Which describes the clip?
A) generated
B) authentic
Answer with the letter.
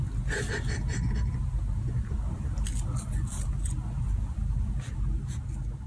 B